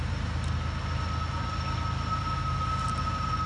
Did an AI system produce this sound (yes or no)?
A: no